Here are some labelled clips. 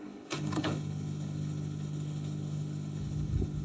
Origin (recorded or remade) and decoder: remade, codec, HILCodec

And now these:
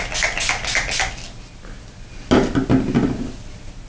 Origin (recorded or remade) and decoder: recorded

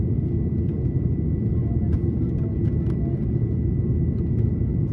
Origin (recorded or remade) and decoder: recorded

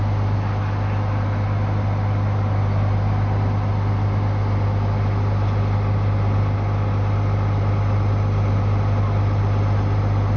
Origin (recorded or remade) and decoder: recorded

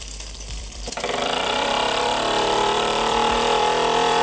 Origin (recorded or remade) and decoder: remade, vocoder, BigVGAN v2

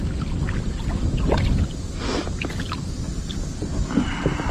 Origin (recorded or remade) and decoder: recorded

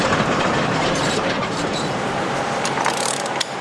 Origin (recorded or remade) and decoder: remade, vocoder, BigVGAN v2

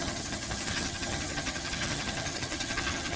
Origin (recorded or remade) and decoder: remade, vocoder, HiFi-GAN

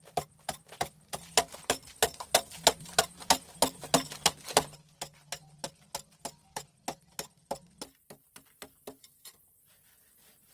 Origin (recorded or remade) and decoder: recorded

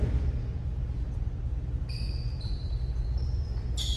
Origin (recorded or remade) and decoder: recorded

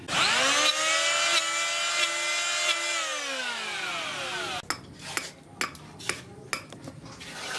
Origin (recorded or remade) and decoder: recorded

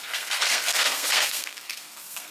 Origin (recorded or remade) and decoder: remade, codec, SNAC